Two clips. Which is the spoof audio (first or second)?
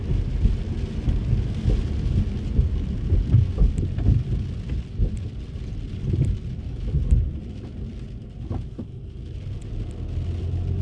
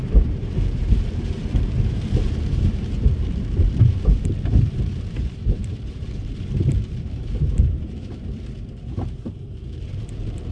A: second